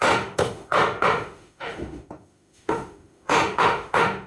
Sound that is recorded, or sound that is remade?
remade